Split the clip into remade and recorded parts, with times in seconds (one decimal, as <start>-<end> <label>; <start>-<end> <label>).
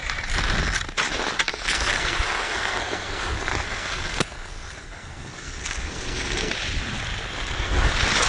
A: 0.0-1.5 recorded; 1.5-6.5 remade; 6.5-7.3 recorded; 7.3-7.9 remade; 7.9-8.3 recorded